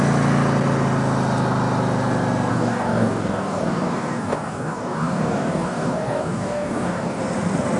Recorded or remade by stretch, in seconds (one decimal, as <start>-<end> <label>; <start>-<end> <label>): 0.0-2.5 recorded; 2.5-7.2 remade; 7.2-7.8 recorded